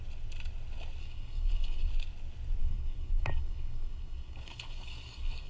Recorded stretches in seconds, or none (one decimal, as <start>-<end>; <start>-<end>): 0.0-1.0; 1.9-2.6